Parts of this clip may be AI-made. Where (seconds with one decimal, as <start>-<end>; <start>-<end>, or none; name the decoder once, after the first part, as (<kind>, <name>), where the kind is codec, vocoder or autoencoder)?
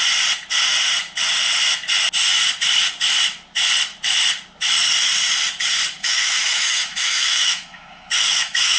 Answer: 6.0-8.8 (autoencoder, DAC-VAE)